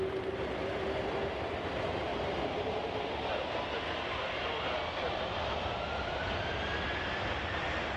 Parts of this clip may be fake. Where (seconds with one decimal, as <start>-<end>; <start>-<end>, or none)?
2.1-3.3